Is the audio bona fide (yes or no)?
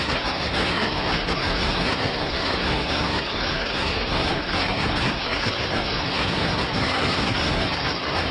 no